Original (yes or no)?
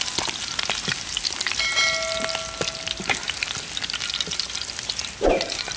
yes